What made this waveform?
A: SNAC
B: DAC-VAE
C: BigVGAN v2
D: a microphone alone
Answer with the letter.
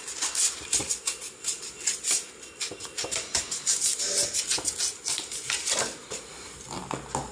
D